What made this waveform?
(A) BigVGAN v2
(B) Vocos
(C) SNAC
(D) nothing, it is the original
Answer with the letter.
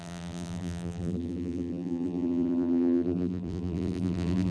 A